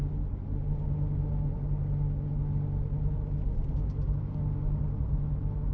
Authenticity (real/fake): real